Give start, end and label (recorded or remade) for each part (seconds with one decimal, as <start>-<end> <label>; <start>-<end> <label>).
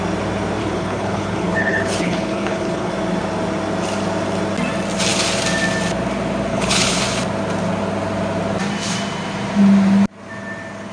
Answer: 0.0-0.6 recorded; 0.6-2.9 remade; 2.9-6.5 recorded; 6.5-7.0 remade; 7.0-10.9 recorded